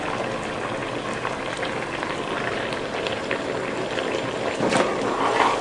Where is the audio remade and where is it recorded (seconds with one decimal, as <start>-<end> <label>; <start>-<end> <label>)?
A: 0.0-5.6 recorded